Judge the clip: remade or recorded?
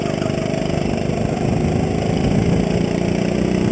recorded